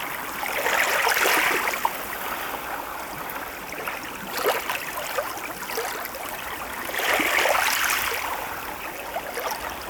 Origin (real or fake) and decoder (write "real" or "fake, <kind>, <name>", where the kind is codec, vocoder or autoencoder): real